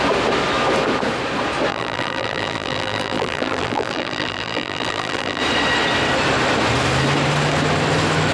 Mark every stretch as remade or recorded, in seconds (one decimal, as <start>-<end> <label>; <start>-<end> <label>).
0.0-1.7 recorded; 1.7-5.4 remade; 5.4-8.3 recorded